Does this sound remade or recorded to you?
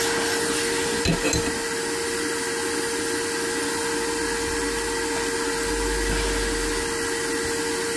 recorded